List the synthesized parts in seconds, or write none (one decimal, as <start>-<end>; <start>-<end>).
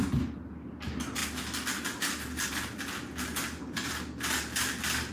none